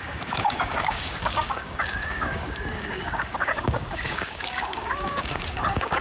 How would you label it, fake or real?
fake